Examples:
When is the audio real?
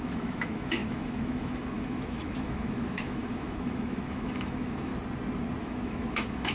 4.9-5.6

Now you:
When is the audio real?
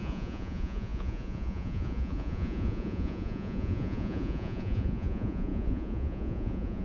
none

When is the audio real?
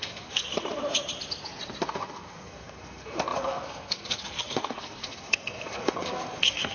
0.5-1.8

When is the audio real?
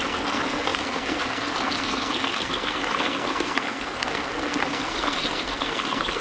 none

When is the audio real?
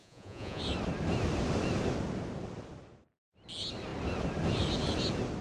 0.6-5.4